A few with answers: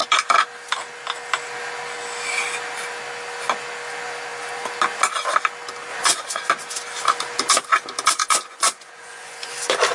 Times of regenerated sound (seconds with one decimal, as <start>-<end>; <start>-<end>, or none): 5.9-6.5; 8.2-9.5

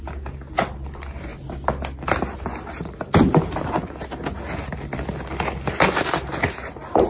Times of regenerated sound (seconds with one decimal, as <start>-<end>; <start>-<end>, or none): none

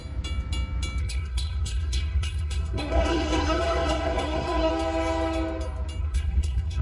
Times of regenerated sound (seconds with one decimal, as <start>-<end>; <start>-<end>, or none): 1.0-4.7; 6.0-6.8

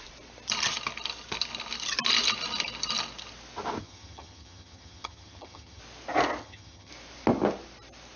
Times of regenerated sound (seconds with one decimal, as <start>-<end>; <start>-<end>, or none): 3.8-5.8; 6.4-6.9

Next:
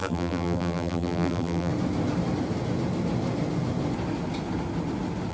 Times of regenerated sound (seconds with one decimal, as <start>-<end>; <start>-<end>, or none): 0.0-1.7

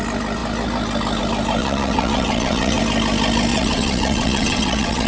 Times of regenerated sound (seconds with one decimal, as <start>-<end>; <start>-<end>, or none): 1.6-2.8; 3.5-5.1

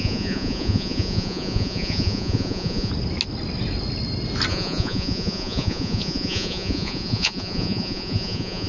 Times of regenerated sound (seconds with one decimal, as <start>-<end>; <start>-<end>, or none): 0.0-2.9; 4.5-8.7